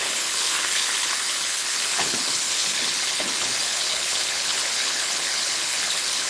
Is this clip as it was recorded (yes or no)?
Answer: no